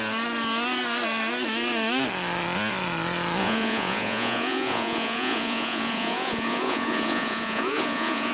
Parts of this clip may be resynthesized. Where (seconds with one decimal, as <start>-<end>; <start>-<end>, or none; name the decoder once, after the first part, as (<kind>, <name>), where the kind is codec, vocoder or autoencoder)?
3.4-8.3 (vocoder, Vocos)